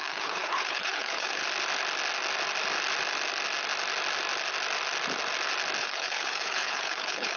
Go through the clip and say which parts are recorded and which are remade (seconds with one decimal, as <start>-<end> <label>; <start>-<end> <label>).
0.0-1.4 remade; 1.4-5.8 recorded; 5.8-7.4 remade

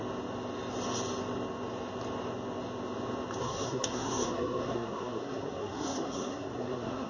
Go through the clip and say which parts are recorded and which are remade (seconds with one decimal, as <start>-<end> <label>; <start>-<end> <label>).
0.0-3.4 recorded; 3.4-7.1 remade

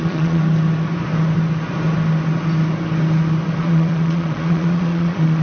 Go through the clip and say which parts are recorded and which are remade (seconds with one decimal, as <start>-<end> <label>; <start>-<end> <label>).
0.0-0.4 remade; 0.4-3.6 recorded; 3.6-5.4 remade

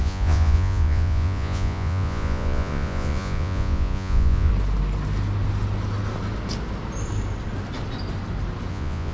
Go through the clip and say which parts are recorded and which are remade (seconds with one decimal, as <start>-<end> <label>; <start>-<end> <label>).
0.0-4.5 remade; 4.5-8.7 recorded; 8.7-9.1 remade

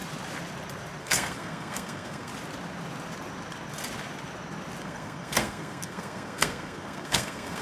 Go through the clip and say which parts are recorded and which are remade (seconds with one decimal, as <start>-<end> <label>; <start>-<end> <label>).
0.0-1.0 recorded; 1.0-2.3 remade; 2.3-4.8 recorded; 4.8-7.6 remade

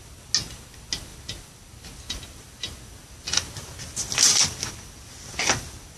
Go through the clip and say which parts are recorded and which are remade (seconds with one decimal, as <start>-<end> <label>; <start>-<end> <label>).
0.0-6.0 recorded